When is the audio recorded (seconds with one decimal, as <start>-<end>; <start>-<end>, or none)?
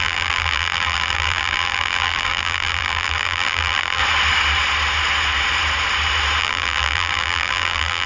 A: 4.0-6.4